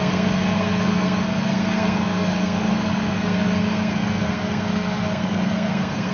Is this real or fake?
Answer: fake